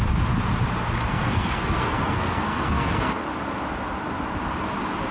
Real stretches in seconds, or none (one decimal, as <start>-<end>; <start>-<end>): 0.0-1.1; 3.2-5.1